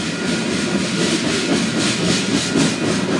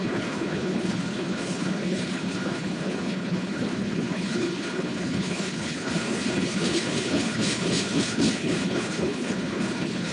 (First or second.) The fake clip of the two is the second